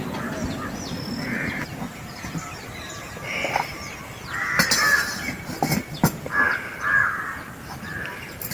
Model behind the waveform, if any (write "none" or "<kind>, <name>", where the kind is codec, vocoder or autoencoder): none